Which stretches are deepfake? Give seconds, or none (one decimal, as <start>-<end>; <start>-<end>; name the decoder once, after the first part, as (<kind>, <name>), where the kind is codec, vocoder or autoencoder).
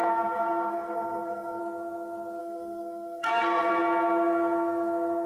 0.0-1.6 (codec, SNAC); 2.4-3.7